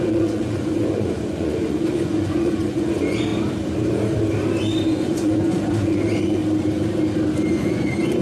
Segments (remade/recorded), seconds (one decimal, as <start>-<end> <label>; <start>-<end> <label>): 0.0-3.3 remade; 3.3-4.9 recorded; 4.9-6.4 remade; 6.4-7.5 recorded; 7.5-8.2 remade